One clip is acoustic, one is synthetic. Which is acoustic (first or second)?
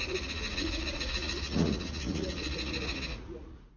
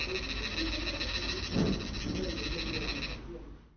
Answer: second